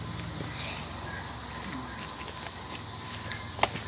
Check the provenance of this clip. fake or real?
real